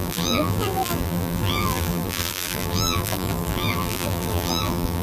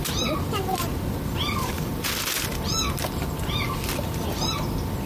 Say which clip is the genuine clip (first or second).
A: second